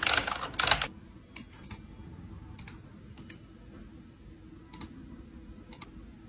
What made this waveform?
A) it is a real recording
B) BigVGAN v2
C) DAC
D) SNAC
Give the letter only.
A